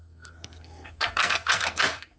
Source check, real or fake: fake